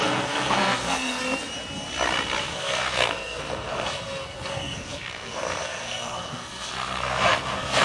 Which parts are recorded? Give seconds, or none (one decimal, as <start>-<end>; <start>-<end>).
1.2-2.4